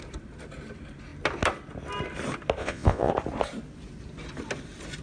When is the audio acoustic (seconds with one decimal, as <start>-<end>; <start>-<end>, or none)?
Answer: 0.0-2.6; 3.1-5.0